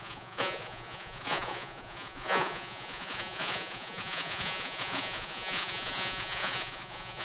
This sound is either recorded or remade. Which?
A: remade